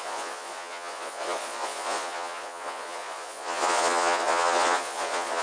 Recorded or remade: remade